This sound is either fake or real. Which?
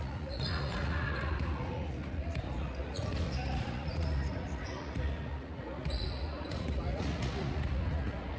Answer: fake